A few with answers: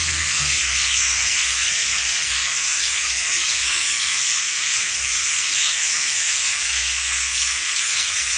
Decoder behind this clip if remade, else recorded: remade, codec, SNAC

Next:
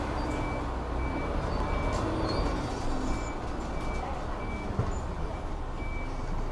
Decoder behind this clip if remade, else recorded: recorded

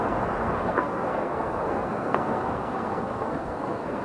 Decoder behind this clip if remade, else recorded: remade, codec, SNAC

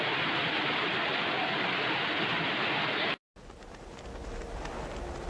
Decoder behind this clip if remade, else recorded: recorded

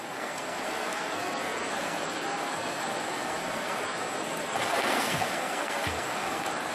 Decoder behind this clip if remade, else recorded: remade, codec, SNAC